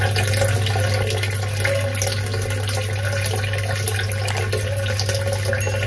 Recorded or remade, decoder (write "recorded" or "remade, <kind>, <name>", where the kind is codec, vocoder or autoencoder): recorded